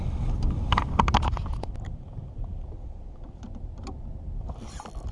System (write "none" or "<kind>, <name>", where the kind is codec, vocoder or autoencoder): none